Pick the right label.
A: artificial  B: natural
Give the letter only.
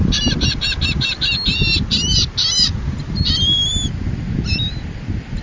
A